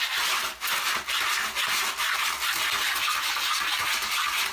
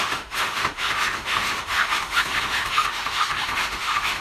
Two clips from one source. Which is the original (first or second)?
first